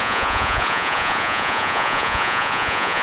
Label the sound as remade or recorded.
remade